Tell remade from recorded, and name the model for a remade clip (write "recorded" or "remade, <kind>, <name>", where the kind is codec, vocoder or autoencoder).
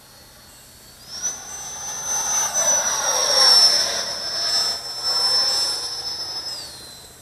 recorded